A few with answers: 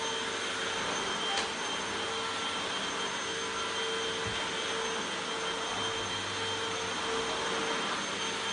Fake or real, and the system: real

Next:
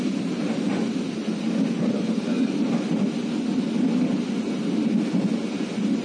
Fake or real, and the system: real